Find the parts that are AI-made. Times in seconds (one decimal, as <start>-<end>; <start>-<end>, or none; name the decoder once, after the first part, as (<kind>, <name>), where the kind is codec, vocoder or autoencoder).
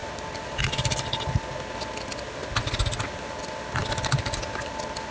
none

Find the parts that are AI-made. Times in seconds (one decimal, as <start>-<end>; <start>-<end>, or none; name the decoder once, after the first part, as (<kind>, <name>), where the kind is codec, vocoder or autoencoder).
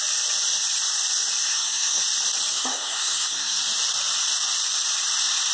1.5-2.0 (codec, SNAC); 2.5-3.6